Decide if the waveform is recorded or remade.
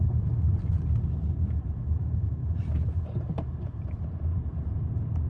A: recorded